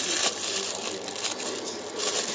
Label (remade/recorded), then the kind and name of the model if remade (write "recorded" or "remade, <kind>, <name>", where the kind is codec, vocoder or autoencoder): recorded